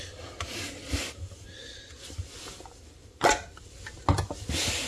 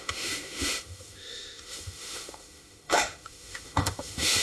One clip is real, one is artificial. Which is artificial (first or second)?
second